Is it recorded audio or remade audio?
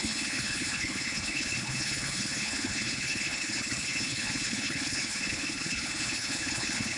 remade